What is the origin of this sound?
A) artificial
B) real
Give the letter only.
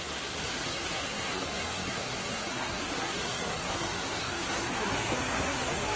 A